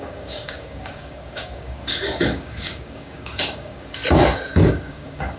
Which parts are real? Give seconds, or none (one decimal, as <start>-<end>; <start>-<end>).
4.0-4.7